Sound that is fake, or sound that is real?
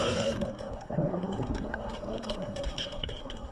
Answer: fake